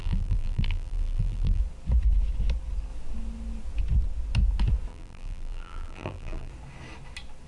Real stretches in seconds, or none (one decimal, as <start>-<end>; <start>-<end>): 1.6-4.9; 6.5-7.5